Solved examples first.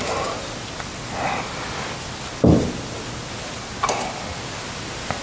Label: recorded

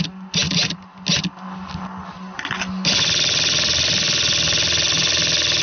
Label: recorded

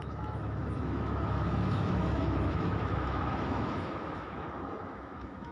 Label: remade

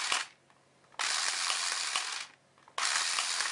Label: recorded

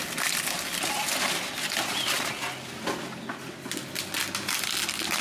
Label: recorded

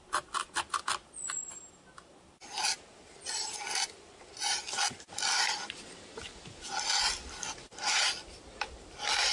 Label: recorded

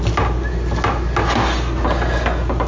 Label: recorded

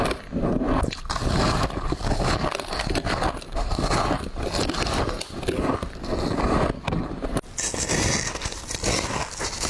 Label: recorded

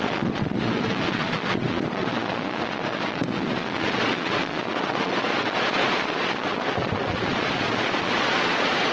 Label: remade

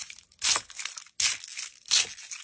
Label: recorded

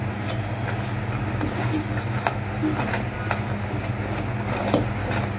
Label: recorded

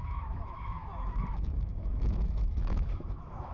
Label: remade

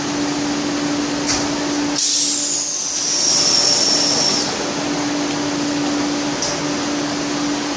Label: recorded